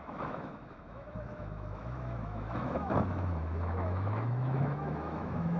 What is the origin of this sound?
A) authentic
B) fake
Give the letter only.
B